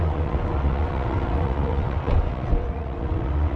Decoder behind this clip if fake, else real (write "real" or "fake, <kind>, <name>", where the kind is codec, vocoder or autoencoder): fake, vocoder, WaveNeXt